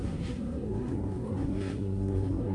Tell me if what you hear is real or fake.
fake